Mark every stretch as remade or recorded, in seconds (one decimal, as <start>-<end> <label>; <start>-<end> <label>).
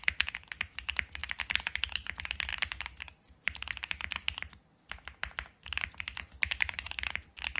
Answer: 0.0-7.6 recorded